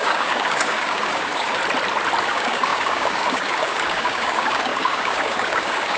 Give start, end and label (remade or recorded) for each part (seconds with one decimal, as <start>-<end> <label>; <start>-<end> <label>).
0.0-1.6 remade; 1.6-2.2 recorded; 2.2-6.0 remade